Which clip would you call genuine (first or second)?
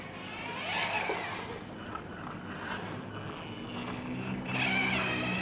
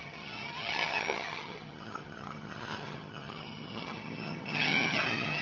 first